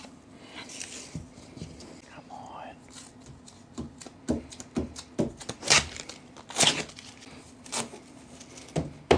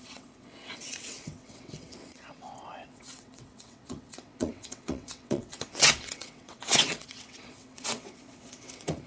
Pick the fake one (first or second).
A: second